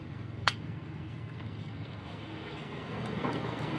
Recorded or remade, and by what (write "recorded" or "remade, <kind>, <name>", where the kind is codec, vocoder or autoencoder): remade, codec, SNAC